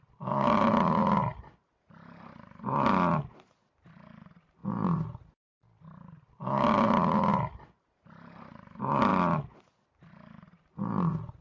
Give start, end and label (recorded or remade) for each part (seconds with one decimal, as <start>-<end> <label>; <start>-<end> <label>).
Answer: 0.0-11.4 recorded